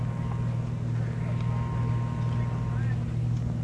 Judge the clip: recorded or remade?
recorded